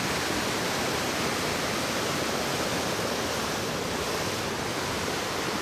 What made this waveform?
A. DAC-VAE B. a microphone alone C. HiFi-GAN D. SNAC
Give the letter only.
B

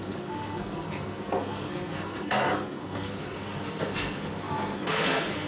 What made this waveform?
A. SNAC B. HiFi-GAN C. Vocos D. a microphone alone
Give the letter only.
A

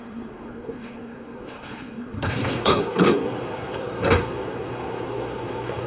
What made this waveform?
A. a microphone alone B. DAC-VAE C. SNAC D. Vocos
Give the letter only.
C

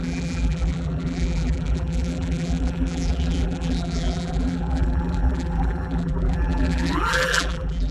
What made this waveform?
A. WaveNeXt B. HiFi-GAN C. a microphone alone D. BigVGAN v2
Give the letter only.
D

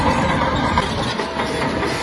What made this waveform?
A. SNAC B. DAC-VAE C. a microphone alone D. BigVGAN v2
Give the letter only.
C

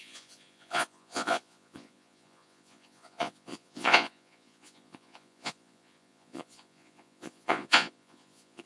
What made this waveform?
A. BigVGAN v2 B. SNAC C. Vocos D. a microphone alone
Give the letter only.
C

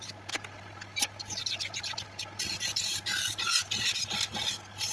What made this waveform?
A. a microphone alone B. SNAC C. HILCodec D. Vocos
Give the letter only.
A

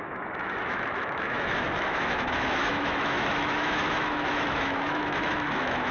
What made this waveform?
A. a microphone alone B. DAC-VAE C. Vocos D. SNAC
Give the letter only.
B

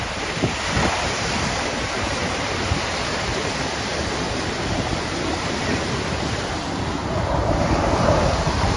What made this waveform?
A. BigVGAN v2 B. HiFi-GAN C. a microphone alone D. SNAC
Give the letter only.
A